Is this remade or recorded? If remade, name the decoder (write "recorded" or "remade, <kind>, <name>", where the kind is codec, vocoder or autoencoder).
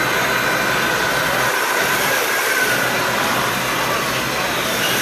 recorded